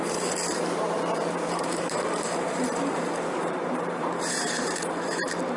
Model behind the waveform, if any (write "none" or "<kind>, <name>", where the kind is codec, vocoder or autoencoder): vocoder, BigVGAN v2